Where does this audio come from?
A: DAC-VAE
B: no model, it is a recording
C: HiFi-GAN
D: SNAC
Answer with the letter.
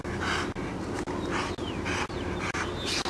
B